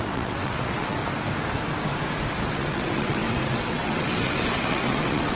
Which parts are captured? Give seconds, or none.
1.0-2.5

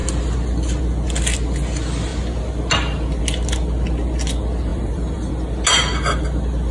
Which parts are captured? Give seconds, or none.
0.0-4.7; 5.3-6.7